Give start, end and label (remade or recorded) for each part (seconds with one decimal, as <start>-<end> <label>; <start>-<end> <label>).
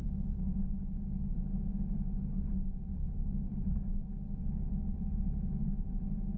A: 0.0-0.6 remade; 0.6-3.0 recorded; 3.0-5.2 remade; 5.2-6.4 recorded